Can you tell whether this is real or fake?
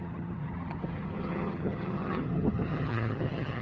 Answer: fake